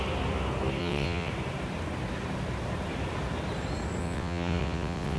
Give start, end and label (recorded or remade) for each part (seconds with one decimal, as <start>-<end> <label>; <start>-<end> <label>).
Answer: 0.0-0.8 recorded; 0.8-1.3 remade; 1.3-4.0 recorded; 4.0-5.2 remade